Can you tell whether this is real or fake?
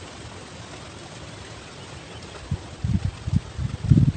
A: real